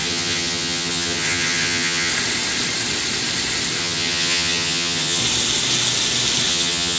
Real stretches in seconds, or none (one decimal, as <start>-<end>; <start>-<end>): 2.1-3.8; 5.2-6.5